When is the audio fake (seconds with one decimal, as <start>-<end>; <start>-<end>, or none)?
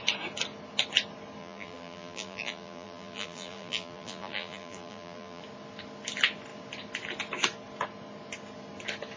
1.4-5.4